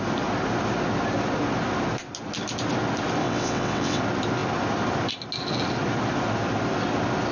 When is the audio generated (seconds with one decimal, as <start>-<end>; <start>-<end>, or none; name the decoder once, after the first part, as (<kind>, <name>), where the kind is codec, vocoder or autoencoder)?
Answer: 3.2-4.0 (vocoder, WaveNeXt)

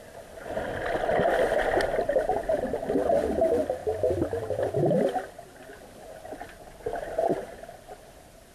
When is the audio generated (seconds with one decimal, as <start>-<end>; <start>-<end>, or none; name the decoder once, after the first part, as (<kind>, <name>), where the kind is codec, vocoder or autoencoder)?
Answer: none

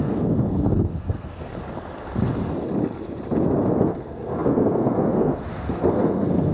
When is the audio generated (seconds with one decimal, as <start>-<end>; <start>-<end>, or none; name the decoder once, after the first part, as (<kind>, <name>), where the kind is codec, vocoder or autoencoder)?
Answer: 0.0-1.5 (codec, SNAC); 3.8-6.5

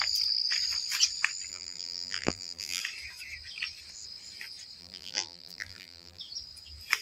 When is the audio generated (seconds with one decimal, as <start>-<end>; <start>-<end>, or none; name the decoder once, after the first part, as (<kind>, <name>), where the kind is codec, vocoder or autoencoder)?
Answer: 1.5-2.8 (vocoder, BigVGAN v2); 4.8-6.2

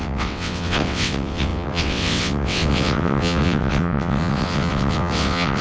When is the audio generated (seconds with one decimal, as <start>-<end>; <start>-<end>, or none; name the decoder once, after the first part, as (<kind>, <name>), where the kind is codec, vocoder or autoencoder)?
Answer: 0.0-5.6 (vocoder, WaveNeXt)